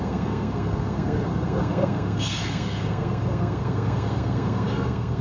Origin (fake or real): fake